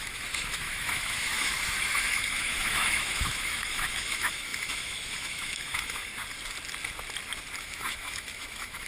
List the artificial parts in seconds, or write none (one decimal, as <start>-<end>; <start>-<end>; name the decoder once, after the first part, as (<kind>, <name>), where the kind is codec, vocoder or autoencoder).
0.0-6.1 (autoencoder, DAC-VAE); 7.6-8.9